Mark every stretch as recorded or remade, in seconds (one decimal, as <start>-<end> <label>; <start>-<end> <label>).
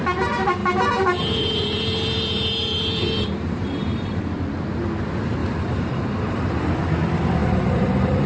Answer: 0.0-0.6 recorded; 0.6-4.2 remade; 4.2-5.4 recorded; 5.4-6.7 remade; 6.7-7.4 recorded; 7.4-8.3 remade